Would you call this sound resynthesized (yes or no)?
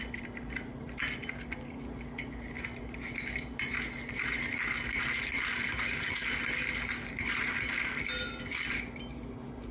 no